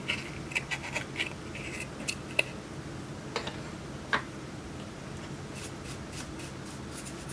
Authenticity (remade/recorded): recorded